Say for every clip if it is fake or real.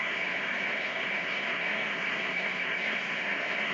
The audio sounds fake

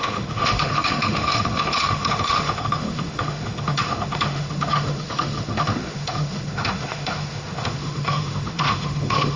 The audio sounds fake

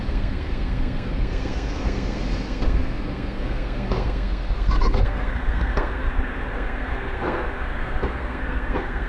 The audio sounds fake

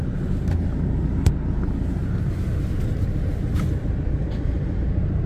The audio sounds real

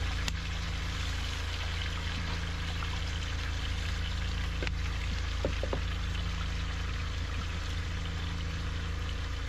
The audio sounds real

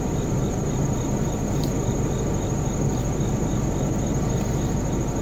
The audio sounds real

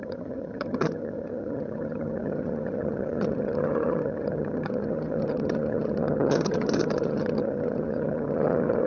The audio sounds fake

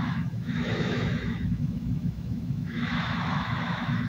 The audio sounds fake